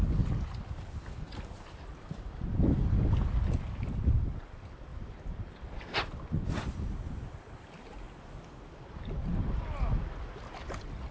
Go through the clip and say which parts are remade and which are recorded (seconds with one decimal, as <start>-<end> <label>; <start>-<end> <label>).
0.0-11.1 recorded